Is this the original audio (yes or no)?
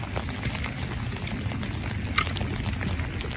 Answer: yes